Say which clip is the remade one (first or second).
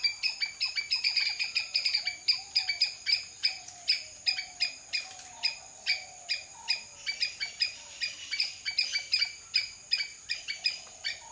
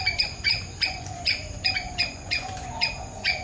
second